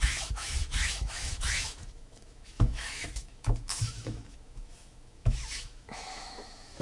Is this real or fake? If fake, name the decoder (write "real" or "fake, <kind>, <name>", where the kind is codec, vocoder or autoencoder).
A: fake, autoencoder, DAC-VAE